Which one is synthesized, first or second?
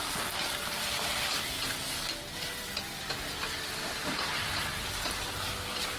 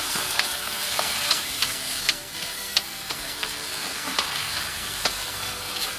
second